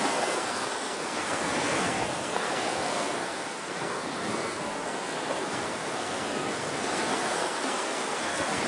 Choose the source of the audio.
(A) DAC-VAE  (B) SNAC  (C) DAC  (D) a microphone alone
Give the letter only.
B